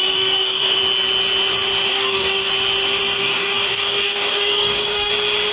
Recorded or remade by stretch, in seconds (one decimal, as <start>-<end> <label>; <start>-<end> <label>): 0.0-0.8 remade; 0.8-1.9 recorded; 1.9-2.5 remade; 2.5-3.2 recorded; 3.2-5.1 remade; 5.1-5.5 recorded